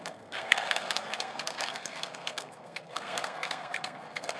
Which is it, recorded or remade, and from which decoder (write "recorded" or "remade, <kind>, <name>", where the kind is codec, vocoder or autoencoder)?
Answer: remade, codec, SNAC